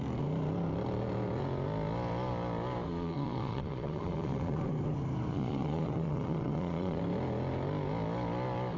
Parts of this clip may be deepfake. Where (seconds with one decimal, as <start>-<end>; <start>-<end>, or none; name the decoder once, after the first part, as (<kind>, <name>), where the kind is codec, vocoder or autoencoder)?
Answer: 2.9-4.6 (vocoder, Vocos); 5.3-7.0